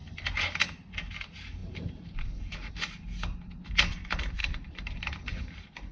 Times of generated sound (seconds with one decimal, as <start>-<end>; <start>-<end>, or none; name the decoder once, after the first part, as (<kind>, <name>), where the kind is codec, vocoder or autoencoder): none

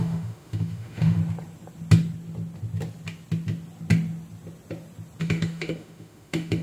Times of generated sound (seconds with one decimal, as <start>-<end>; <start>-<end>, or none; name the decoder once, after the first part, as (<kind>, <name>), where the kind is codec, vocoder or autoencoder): 0.0-1.2 (autoencoder, DAC-VAE); 5.2-6.6

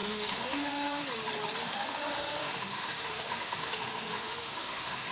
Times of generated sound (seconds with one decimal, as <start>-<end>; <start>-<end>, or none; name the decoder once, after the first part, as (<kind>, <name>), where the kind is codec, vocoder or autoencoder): 0.0-1.0 (autoencoder, DAC-VAE); 1.6-5.1

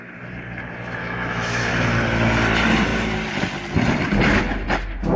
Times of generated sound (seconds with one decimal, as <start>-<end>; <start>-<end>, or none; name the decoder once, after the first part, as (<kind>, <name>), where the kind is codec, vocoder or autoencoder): 1.0-1.7 (autoencoder, DAC-VAE)

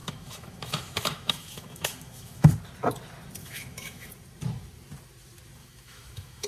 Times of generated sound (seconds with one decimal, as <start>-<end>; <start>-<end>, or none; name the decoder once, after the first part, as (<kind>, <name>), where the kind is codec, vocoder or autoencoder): 0.0-2.5 (autoencoder, DAC-VAE); 3.4-4.1; 5.6-6.5

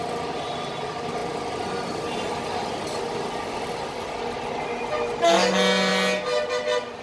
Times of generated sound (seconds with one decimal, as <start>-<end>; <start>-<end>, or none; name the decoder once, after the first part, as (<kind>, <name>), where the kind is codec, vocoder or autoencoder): none